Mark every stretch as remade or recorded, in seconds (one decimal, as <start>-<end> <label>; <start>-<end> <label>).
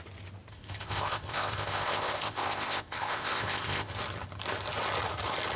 0.0-0.5 recorded; 0.5-3.9 remade; 3.9-5.6 recorded